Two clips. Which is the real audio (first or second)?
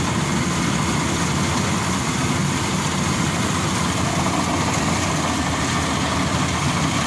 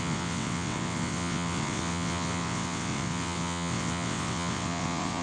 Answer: first